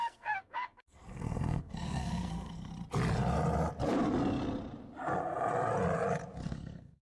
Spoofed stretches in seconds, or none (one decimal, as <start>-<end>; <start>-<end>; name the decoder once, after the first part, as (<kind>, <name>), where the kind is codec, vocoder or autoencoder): 0.0-2.7 (codec, SNAC); 6.4-7.1